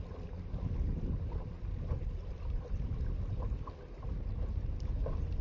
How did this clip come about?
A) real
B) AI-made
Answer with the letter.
A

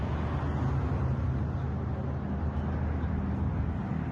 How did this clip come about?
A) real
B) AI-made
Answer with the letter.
A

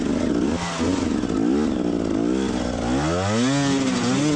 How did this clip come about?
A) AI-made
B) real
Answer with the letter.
B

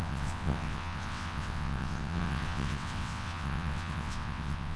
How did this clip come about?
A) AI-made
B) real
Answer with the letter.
A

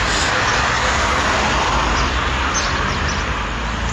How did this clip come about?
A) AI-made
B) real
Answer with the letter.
B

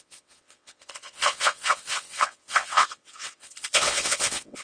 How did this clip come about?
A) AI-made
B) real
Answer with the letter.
A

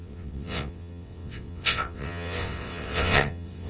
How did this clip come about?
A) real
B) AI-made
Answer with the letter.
B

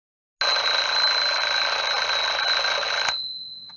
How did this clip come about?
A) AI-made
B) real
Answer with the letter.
B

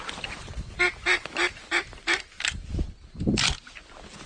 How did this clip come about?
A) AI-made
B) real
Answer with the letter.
B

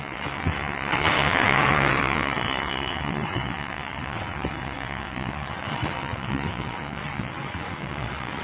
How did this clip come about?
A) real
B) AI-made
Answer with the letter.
B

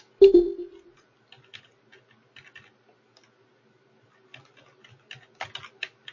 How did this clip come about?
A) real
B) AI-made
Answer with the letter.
A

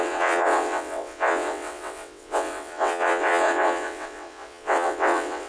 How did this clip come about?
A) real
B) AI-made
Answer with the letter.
B